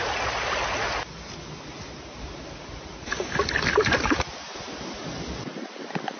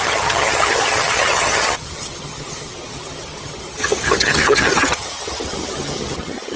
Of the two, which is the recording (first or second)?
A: first